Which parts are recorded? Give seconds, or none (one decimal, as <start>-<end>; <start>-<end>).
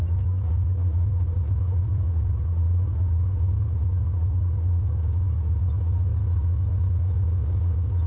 0.0-1.1; 3.7-8.1